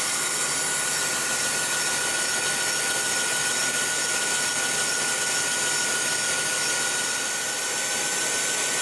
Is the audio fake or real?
real